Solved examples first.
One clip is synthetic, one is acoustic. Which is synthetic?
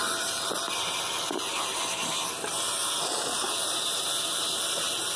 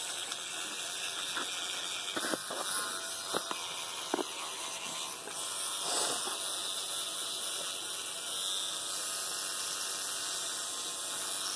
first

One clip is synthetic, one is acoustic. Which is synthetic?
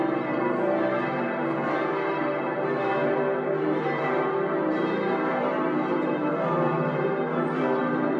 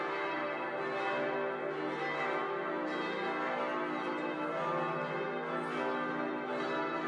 first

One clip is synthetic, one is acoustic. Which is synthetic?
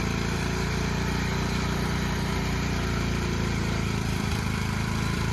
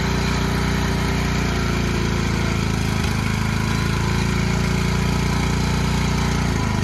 first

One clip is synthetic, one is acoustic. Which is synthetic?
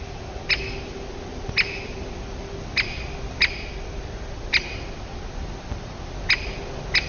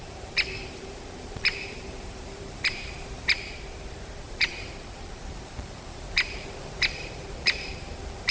second